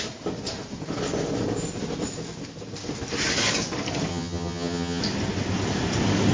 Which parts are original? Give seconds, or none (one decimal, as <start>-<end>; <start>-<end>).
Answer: 0.0-4.1; 5.0-6.3